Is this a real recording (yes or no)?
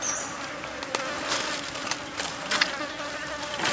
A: yes